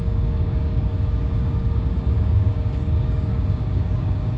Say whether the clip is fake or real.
fake